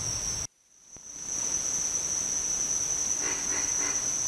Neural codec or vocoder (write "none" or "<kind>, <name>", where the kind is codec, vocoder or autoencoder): none